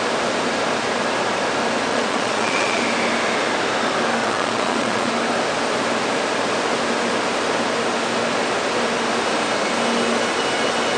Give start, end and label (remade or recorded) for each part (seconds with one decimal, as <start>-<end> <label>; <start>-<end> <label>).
0.0-1.9 recorded; 1.9-2.8 remade; 2.8-4.2 recorded; 4.2-5.1 remade; 5.1-11.0 recorded